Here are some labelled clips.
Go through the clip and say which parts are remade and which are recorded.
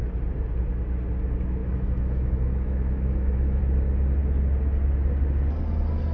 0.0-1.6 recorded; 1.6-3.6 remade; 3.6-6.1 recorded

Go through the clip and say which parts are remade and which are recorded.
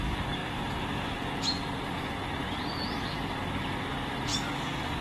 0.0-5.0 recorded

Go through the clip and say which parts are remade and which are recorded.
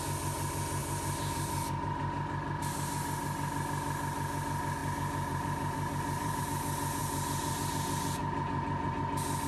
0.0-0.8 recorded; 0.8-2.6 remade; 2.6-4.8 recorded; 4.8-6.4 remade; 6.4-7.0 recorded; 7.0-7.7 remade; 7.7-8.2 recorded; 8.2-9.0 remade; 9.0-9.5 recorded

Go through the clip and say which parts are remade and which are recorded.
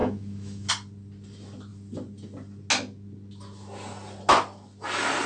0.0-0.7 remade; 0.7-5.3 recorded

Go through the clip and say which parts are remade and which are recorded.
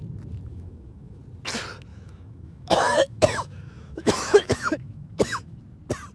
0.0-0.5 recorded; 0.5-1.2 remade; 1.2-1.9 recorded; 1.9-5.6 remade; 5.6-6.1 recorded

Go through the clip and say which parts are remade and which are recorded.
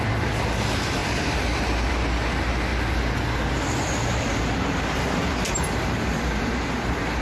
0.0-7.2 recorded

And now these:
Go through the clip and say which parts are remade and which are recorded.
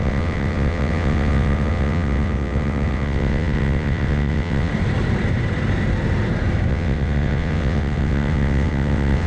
0.0-4.7 remade; 4.7-6.7 recorded; 6.7-9.3 remade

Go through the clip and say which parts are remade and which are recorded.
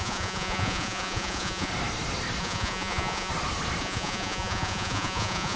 0.0-1.7 remade; 1.7-2.4 recorded; 2.4-3.3 remade; 3.3-3.8 recorded; 3.8-5.6 remade